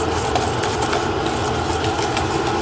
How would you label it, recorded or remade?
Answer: recorded